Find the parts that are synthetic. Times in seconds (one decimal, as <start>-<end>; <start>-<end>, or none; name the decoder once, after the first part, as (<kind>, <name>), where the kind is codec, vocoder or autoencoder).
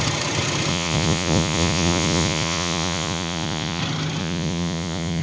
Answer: 0.7-3.8 (vocoder, Vocos); 4.2-5.2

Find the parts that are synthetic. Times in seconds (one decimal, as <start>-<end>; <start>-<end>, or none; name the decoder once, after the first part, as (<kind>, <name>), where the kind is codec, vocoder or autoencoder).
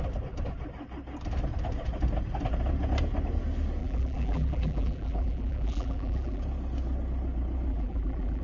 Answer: 3.8-6.4 (vocoder, BigVGAN v2); 7.7-8.4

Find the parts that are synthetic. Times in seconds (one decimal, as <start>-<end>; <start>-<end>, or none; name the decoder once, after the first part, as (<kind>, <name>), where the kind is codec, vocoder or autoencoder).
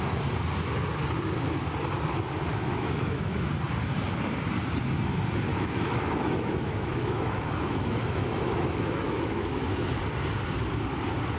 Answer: 2.5-3.5 (autoencoder, DAC-VAE); 5.5-10.0